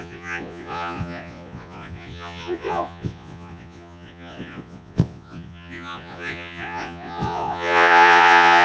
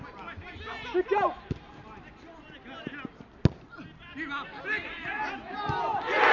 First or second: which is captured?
second